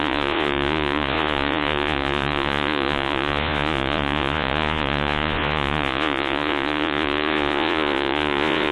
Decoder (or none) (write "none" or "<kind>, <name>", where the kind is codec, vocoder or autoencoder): vocoder, Vocos